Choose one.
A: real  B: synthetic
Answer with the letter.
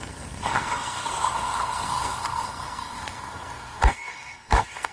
B